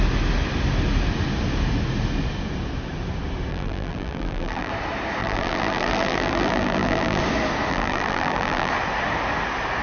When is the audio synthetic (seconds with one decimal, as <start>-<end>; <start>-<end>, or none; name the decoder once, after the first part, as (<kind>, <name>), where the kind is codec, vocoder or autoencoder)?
3.5-4.7 (vocoder, BigVGAN v2); 5.2-7.2; 7.7-8.7